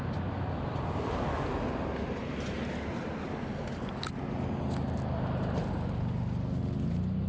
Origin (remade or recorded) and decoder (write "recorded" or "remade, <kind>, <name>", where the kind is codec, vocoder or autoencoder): recorded